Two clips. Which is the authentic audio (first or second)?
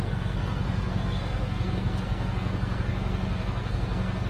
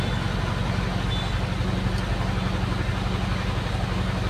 second